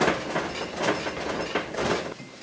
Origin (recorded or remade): recorded